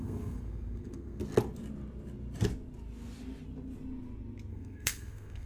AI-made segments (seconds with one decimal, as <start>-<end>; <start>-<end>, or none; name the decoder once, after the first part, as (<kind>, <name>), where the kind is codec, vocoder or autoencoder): 0.0-1.2 (codec, SNAC); 4.5-5.5